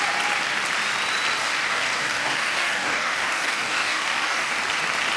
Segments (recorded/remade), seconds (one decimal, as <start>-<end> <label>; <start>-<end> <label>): 0.0-1.4 recorded; 1.4-4.5 remade; 4.5-5.2 recorded